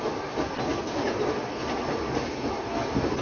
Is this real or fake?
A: real